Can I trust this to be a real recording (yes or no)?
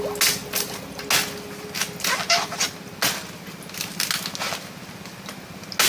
yes